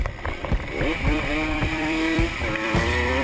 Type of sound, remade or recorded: remade